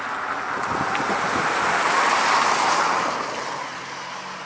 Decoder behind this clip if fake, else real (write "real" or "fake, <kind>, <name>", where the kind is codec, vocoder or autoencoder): real